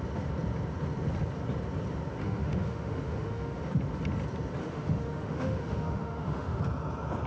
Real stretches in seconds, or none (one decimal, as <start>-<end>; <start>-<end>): 0.0-2.2; 3.6-4.6; 6.6-7.3